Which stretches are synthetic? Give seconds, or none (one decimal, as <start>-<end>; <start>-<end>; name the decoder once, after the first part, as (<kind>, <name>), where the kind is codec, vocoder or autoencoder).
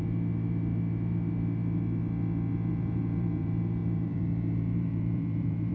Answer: 2.7-5.7 (vocoder, BigVGAN v2)